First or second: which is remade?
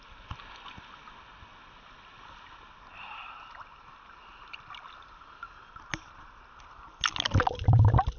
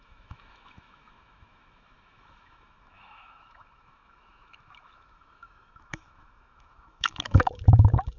second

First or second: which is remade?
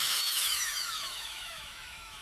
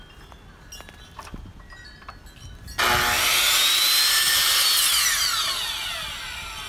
first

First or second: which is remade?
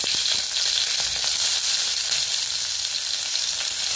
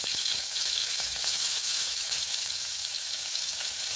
second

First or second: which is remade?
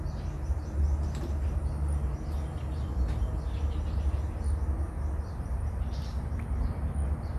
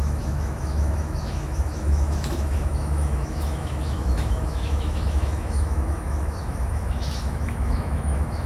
second